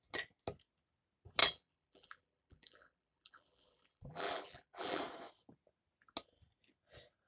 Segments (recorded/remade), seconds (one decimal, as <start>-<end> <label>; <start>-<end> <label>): 0.0-1.4 recorded; 1.4-5.0 remade; 5.0-7.3 recorded